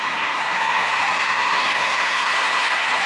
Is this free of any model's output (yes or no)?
no